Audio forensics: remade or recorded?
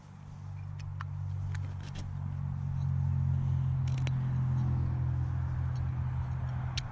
recorded